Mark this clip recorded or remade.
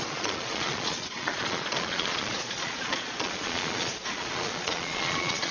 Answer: remade